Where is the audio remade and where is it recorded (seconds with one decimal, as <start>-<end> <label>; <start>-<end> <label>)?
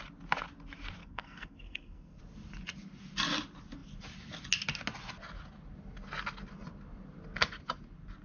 0.0-1.0 recorded; 1.0-2.2 remade; 2.2-8.2 recorded